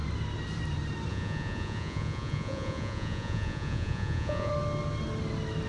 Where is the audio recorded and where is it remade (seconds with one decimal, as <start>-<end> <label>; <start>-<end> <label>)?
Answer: 0.0-1.1 recorded; 1.1-4.5 remade; 4.5-5.7 recorded